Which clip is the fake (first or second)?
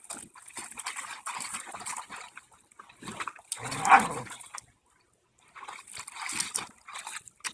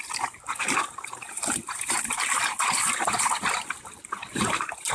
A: second